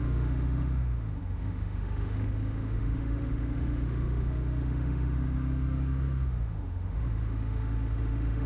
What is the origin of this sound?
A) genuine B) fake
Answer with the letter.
B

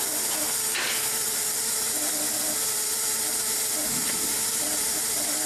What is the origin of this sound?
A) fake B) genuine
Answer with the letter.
B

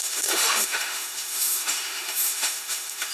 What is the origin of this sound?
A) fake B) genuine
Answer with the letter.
A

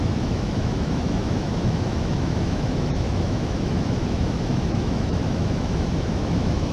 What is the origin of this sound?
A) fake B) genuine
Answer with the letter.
A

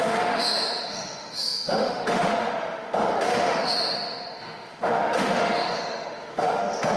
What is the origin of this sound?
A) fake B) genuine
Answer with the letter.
A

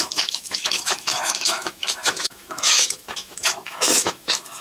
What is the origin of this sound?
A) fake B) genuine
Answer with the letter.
A